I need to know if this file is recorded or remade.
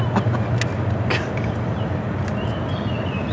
recorded